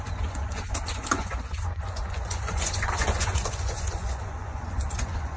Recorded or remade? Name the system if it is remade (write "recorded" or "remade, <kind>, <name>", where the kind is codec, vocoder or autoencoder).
remade, vocoder, Vocos